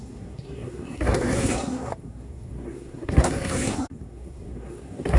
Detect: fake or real fake